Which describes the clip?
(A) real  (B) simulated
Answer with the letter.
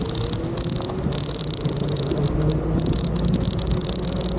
A